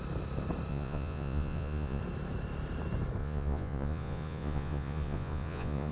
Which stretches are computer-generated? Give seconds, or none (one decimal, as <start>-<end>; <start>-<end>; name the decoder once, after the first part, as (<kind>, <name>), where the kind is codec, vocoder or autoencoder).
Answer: 0.7-2.0 (vocoder, Vocos); 3.2-5.9